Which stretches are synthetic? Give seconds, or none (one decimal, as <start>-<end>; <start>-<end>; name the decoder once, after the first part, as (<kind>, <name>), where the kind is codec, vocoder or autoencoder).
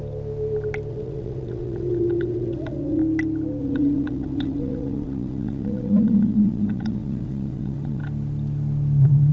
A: 0.9-3.0 (vocoder, WaveNeXt); 3.6-8.0